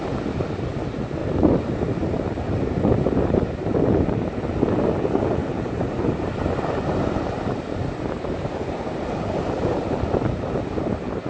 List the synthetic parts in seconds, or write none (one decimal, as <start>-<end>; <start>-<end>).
1.2-3.7; 5.4-10.0